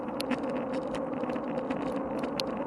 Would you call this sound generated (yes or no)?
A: no